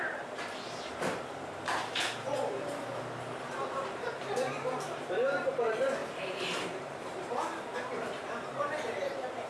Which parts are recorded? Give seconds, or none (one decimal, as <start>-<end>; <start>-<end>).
none